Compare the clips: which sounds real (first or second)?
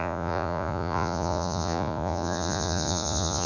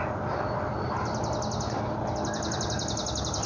second